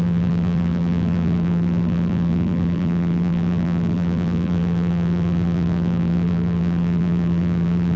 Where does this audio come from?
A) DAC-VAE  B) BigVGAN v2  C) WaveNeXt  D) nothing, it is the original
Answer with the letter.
B